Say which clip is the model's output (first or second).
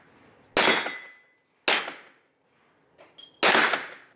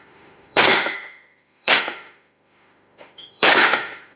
second